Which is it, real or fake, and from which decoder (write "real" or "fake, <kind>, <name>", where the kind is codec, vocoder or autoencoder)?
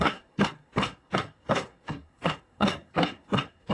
fake, codec, SNAC